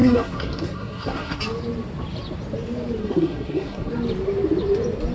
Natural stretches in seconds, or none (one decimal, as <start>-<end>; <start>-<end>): 1.4-3.0; 3.9-5.1